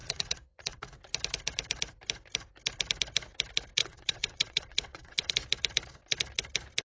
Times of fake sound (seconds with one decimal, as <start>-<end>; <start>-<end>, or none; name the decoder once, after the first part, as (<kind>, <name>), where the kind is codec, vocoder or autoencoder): 0.0-0.8 (vocoder, WaveNeXt); 3.8-5.3

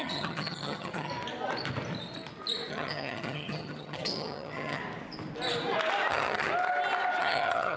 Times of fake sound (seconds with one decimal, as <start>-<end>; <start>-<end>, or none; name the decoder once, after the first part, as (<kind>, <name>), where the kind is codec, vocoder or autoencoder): 0.0-1.1 (vocoder, HiFi-GAN); 2.7-4.8; 6.1-6.5; 7.2-7.8

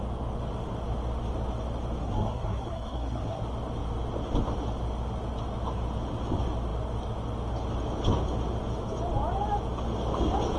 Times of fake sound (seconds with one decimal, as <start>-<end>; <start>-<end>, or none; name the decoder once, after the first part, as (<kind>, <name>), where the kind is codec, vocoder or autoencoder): 2.0-3.4 (codec, SNAC)

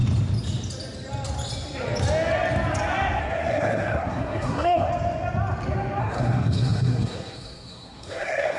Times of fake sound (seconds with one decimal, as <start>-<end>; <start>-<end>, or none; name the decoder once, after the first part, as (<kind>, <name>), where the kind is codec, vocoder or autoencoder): 3.2-4.9 (codec, SNAC); 6.0-8.6

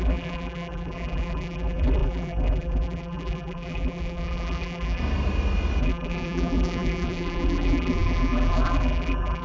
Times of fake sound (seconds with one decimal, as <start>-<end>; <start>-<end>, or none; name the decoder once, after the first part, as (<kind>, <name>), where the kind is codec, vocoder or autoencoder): 0.0-5.0 (vocoder, BigVGAN v2); 5.8-9.4

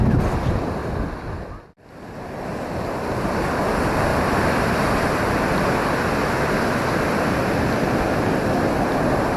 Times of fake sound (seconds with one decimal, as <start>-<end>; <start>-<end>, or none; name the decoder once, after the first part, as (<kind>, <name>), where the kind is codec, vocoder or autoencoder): 0.8-1.6 (vocoder, BigVGAN v2); 4.1-5.8

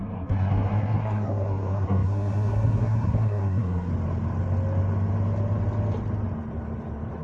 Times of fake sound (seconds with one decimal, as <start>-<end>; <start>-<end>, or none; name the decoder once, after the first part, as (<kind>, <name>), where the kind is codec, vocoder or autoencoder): 0.0-3.9 (codec, SNAC)